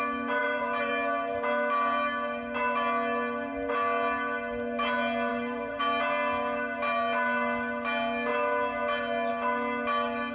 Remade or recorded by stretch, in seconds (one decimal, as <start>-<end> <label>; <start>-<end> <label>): 0.0-0.4 recorded; 0.4-0.9 remade; 0.9-5.3 recorded; 5.3-5.8 remade; 5.8-10.3 recorded